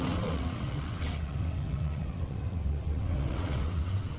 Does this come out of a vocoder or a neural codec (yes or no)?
yes